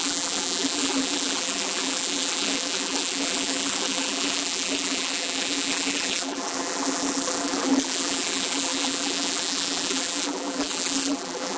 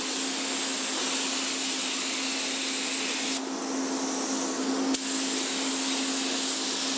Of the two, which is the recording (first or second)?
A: second